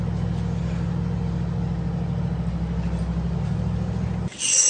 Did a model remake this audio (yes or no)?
no